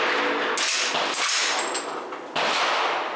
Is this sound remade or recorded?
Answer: recorded